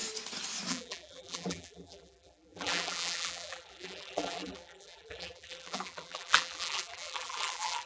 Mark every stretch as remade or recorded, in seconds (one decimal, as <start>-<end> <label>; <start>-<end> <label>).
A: 0.0-0.7 recorded; 0.7-7.9 remade